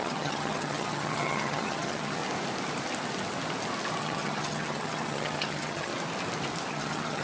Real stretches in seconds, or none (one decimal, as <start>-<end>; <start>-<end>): 2.2-4.0; 5.9-6.7

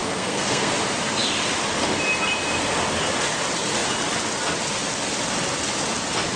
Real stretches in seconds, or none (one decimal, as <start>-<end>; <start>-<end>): 0.7-6.4

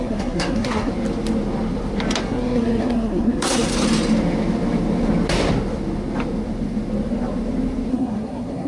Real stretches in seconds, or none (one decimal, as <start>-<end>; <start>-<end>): 0.9-2.2; 3.7-7.9

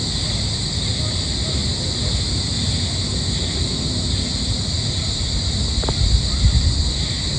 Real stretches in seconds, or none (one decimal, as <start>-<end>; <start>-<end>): 0.0-7.4

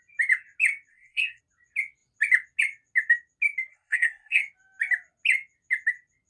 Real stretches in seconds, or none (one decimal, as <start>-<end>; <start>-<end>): 0.0-0.9; 1.4-3.7; 4.4-6.3

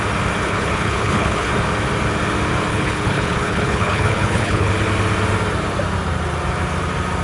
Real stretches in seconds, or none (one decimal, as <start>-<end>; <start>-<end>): 0.0-0.4; 1.5-2.7; 4.7-7.2